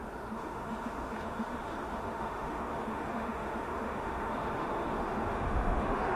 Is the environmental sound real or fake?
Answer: fake